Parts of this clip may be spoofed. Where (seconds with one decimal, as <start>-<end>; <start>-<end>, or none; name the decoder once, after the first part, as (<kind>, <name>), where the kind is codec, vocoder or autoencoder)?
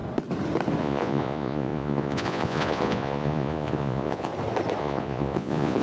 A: 0.8-4.3 (vocoder, Vocos); 4.8-5.8